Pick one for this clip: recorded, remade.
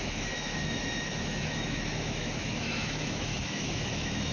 remade